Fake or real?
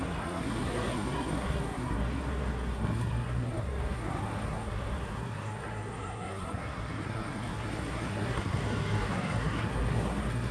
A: fake